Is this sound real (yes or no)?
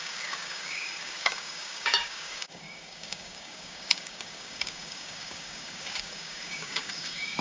no